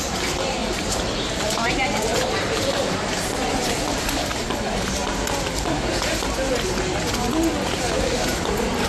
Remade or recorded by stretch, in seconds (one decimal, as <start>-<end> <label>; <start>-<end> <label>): 0.0-5.0 remade; 5.0-8.9 recorded